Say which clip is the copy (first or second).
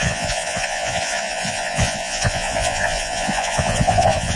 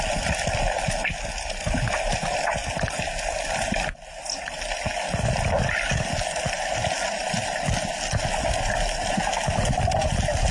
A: first